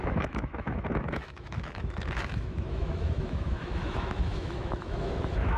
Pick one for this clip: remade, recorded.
remade